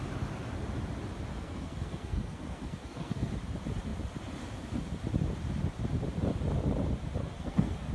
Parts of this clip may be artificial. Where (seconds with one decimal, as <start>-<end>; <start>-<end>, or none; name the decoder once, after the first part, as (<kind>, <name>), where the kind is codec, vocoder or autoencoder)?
1.3-3.3 (codec, SNAC); 7.2-7.9